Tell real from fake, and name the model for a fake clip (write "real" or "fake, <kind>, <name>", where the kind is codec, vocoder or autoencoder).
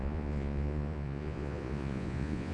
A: fake, vocoder, Vocos